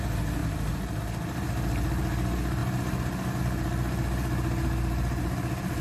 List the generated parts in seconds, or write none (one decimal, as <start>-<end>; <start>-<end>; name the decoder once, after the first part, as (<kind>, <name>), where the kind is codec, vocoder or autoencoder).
0.4-1.0 (vocoder, BigVGAN v2)